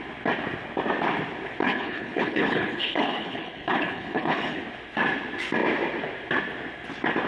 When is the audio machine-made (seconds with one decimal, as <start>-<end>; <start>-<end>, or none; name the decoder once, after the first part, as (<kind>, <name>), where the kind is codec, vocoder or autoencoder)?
1.6-4.6 (codec, HILCodec)